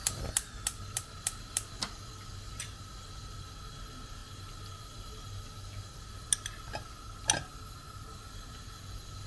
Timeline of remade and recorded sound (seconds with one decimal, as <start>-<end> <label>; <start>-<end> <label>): 0.0-9.3 recorded